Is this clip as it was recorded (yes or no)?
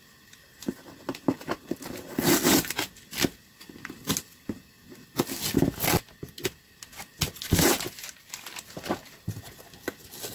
yes